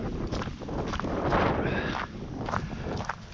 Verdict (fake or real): real